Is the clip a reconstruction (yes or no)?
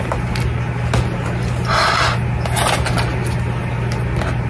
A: no